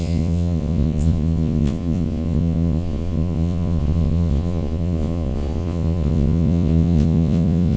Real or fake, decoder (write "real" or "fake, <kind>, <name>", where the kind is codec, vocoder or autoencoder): fake, vocoder, Vocos